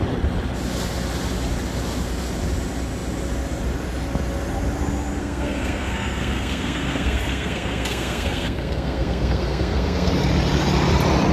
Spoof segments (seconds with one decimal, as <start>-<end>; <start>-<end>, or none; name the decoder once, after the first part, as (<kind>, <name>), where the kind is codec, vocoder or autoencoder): 5.2-10.1 (codec, SNAC)